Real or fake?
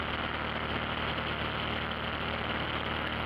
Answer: real